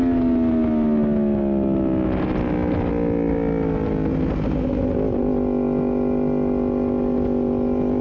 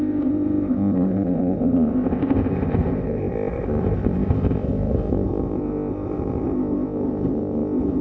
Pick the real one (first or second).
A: first